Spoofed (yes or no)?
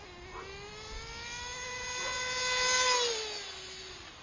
no